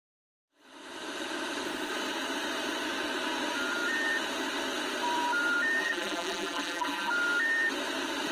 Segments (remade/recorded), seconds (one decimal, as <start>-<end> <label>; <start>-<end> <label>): 0.0-5.8 recorded; 5.8-7.1 remade; 7.1-8.3 recorded